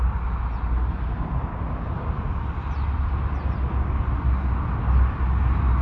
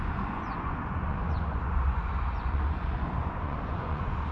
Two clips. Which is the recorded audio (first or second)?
first